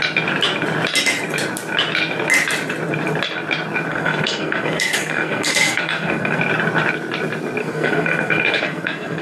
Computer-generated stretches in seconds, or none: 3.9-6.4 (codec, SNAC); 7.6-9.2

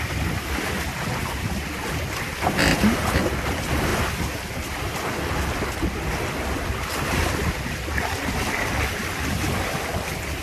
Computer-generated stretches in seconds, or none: none

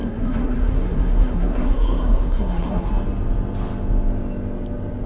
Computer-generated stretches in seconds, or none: 0.0-2.9 (codec, SNAC)

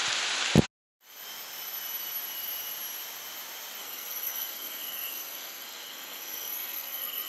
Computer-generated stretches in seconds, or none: 3.8-7.3 (codec, SNAC)

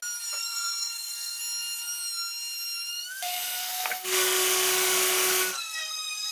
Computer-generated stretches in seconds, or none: 0.4-1.4 (codec, SNAC); 2.9-6.3

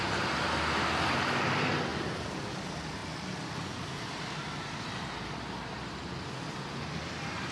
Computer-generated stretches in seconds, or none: none

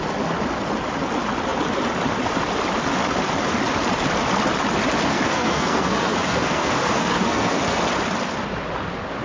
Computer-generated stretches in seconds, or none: 5.1-7.8 (codec, SNAC)

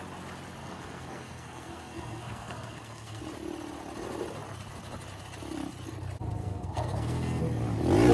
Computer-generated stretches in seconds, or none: 0.6-3.2 (codec, SNAC); 6.4-7.4